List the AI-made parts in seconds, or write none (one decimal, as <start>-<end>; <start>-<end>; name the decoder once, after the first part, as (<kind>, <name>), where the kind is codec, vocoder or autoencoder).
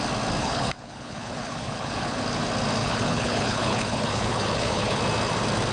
0.4-2.2 (codec, HILCodec); 2.8-5.0